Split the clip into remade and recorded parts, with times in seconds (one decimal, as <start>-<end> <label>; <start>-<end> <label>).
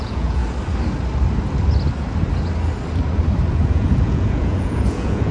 0.0-0.4 remade; 0.4-3.5 recorded; 3.5-5.3 remade